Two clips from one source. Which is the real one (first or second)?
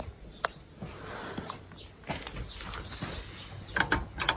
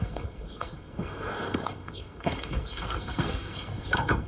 first